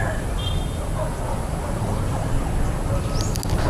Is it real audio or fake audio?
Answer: real